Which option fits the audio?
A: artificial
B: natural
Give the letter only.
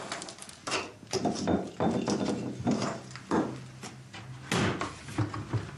B